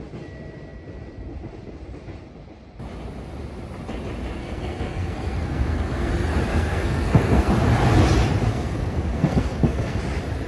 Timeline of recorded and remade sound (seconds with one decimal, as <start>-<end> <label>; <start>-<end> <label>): 0.0-4.4 recorded; 4.4-6.1 remade; 6.1-6.5 recorded; 6.5-7.5 remade; 7.5-8.5 recorded; 8.5-10.0 remade; 10.0-10.5 recorded